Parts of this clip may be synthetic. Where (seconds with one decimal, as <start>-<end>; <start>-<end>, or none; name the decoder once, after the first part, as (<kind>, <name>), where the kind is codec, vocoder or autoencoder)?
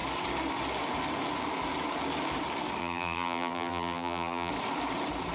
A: 2.8-4.5 (vocoder, BigVGAN v2)